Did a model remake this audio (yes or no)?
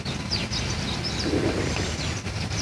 no